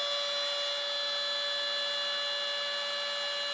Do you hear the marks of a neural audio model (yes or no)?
no